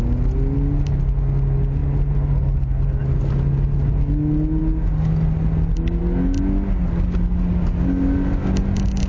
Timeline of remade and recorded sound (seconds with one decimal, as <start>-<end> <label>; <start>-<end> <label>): 0.0-9.1 recorded